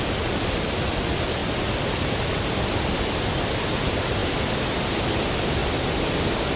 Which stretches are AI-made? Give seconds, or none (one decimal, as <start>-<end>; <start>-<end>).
none